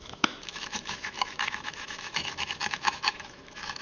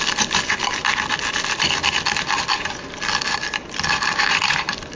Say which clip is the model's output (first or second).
first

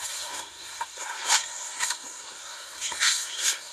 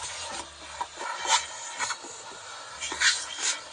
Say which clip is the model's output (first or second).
first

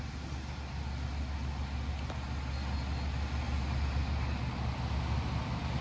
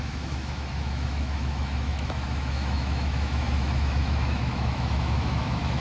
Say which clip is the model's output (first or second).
second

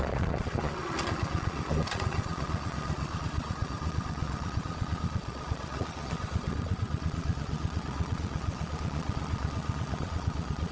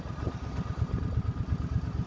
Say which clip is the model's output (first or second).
first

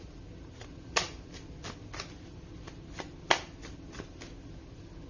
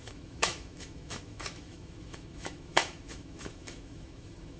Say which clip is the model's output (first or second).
second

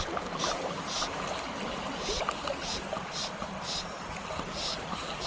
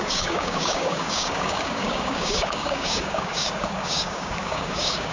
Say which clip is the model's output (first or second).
second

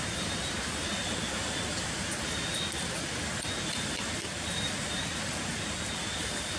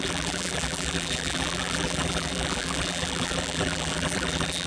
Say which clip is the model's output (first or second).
second